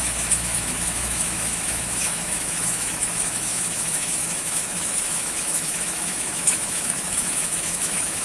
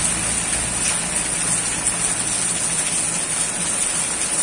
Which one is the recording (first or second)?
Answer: second